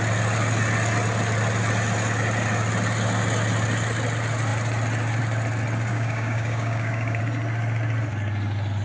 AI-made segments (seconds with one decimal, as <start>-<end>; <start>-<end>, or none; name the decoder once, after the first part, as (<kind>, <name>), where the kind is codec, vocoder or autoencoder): 5.9-7.2 (codec, DAC)